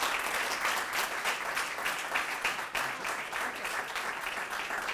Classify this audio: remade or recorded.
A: recorded